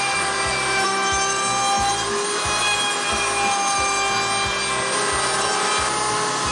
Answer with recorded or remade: recorded